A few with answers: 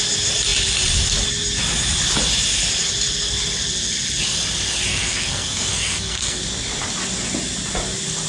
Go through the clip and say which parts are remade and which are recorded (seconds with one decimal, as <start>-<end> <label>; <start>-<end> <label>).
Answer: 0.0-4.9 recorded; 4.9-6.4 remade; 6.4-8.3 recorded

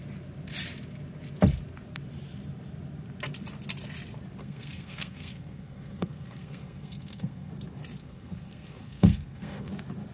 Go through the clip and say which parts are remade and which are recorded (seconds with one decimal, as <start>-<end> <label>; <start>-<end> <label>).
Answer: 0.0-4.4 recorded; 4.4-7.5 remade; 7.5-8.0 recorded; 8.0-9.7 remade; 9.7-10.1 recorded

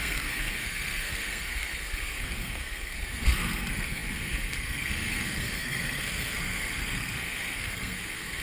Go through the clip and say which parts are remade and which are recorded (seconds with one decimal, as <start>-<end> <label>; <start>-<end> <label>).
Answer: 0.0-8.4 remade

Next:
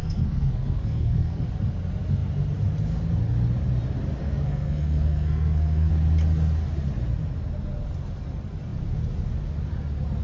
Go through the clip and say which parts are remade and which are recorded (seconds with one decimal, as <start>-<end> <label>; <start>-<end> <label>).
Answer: 0.0-1.5 remade; 1.5-4.2 recorded; 4.2-5.9 remade; 5.9-10.2 recorded

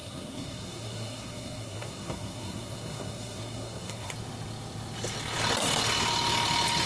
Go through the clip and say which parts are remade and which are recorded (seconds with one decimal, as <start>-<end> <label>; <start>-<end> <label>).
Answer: 0.0-4.1 remade; 4.1-6.9 recorded

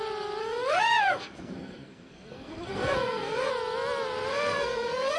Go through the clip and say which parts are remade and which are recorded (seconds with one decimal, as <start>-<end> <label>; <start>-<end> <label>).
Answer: 0.0-0.4 recorded; 0.4-3.5 remade; 3.5-4.3 recorded; 4.3-5.2 remade